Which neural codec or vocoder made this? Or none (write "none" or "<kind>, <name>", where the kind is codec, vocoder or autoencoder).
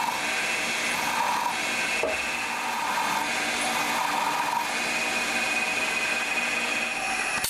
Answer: none